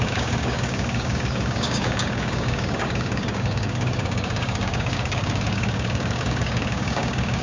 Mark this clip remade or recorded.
remade